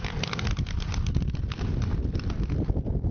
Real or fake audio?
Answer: real